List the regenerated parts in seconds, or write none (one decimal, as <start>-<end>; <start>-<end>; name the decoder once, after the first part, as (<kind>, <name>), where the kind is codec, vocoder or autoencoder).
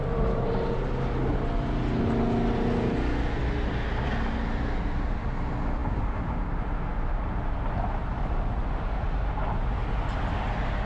0.0-0.9 (vocoder, BigVGAN v2)